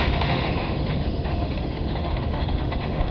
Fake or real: fake